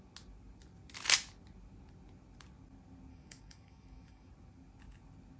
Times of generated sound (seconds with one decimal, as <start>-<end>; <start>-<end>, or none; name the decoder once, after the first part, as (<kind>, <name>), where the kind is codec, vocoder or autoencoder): 3.1-4.3 (codec, DAC)